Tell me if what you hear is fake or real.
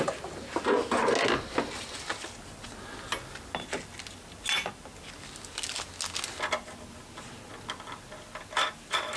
real